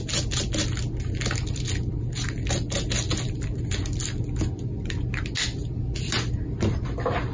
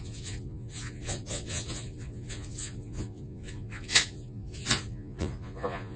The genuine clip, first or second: first